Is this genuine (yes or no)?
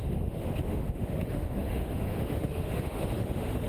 no